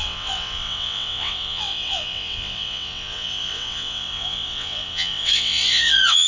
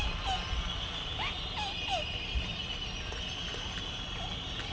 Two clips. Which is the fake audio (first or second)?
first